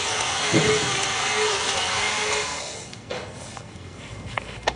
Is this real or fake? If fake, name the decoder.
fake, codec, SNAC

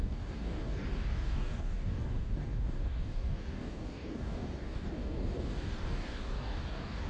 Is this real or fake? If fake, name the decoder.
fake, codec, DAC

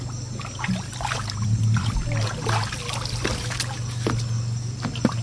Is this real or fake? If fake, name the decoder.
real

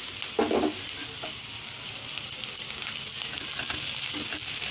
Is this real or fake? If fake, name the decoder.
real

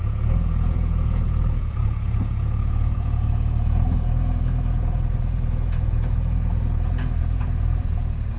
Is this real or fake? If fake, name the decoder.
fake, vocoder, Vocos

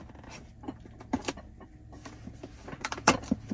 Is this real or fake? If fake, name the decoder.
fake, vocoder, BigVGAN v2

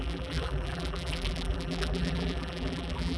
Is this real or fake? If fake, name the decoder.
fake, vocoder, BigVGAN v2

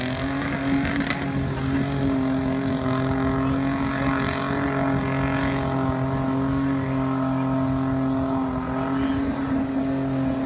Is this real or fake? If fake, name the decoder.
real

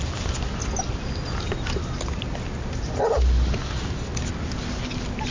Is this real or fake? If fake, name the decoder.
real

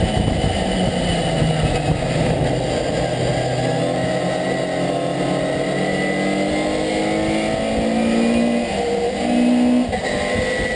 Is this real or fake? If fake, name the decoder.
real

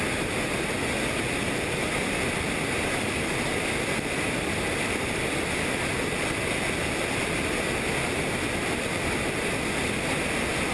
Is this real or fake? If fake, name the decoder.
real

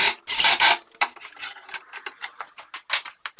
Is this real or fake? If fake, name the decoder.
real